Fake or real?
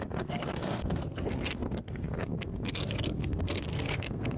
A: fake